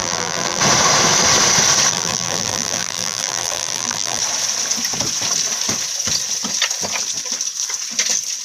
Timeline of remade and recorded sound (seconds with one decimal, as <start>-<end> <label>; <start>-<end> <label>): 0.0-0.6 remade; 0.6-1.9 recorded; 1.9-4.2 remade; 4.2-8.4 recorded

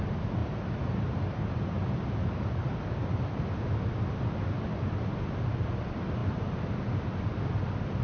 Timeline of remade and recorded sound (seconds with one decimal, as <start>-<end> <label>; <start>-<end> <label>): 0.0-0.4 recorded; 0.4-2.9 remade; 2.9-8.0 recorded

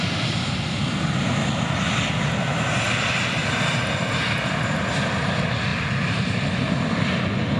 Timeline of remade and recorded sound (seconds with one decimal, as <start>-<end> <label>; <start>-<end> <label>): 0.0-7.6 recorded

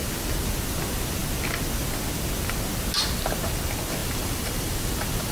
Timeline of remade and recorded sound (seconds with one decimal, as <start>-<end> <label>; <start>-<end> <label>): 0.0-4.0 recorded; 4.0-5.3 remade

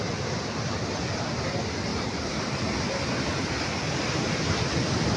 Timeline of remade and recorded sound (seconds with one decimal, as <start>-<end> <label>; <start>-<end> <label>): 0.0-1.9 recorded; 1.9-2.9 remade; 2.9-5.2 recorded

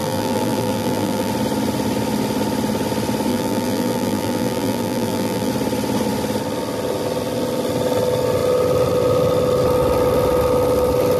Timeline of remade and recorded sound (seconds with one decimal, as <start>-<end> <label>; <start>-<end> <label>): 0.0-1.3 remade; 1.3-3.3 recorded; 3.3-5.5 remade; 5.5-11.2 recorded

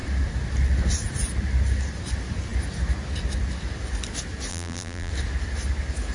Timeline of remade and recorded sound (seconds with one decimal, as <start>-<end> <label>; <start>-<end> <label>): 0.0-4.5 recorded; 4.5-5.1 remade; 5.1-6.1 recorded